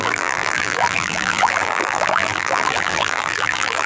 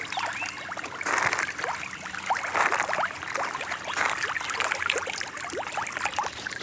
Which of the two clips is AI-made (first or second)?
first